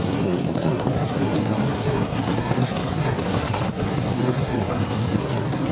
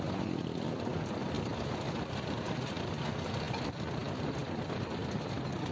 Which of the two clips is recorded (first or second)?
second